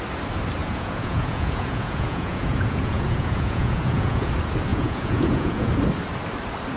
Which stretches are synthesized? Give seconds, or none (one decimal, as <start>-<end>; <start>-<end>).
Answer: 0.6-4.3; 4.7-5.7